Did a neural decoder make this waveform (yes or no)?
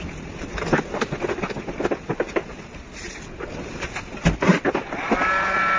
no